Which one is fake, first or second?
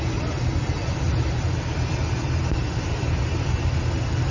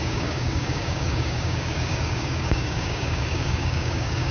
second